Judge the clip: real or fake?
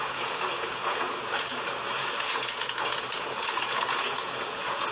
fake